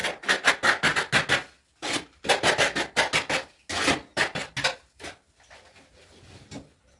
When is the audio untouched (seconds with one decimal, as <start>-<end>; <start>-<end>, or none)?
0.0-7.0